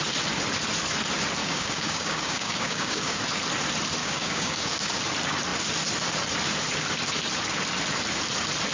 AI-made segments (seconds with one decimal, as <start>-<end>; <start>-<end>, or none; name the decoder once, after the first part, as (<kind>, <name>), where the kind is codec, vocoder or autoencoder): 1.4-3.2 (codec, DAC); 4.0-4.9